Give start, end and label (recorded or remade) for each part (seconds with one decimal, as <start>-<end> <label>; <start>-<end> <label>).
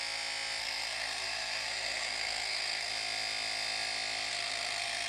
0.0-0.6 recorded; 0.6-2.9 remade; 2.9-4.3 recorded; 4.3-5.1 remade